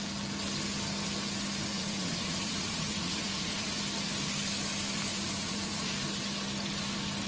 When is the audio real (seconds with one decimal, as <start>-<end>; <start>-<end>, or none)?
0.0-1.7; 3.8-5.1; 5.9-7.3